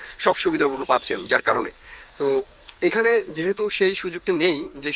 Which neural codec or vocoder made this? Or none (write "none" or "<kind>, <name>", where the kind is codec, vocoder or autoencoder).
codec, SNAC